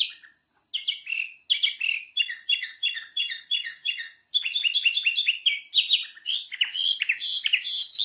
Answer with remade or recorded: recorded